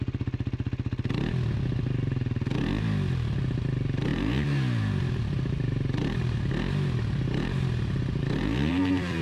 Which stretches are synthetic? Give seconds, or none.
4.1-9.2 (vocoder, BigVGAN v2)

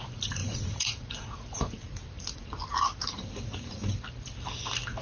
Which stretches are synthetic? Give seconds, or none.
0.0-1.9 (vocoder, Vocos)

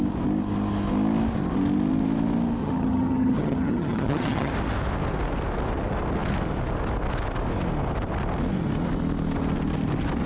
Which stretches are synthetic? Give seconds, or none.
2.6-4.5 (vocoder, HiFi-GAN)

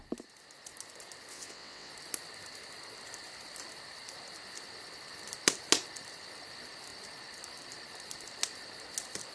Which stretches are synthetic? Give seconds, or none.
1.3-1.9 (vocoder, WaveNeXt)

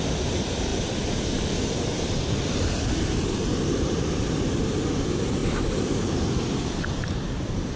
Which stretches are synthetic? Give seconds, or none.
0.0-7.8 (vocoder, BigVGAN v2)

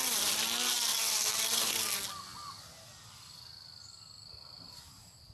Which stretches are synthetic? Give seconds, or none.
none

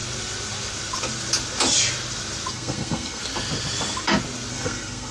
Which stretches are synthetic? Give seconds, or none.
2.5-3.2 (codec, SNAC); 4.5-5.1